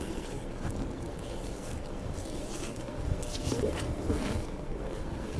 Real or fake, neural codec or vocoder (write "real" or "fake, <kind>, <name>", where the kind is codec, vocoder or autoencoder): fake, codec, SNAC